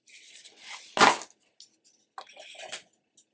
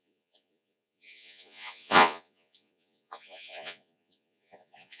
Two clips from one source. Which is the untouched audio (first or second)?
first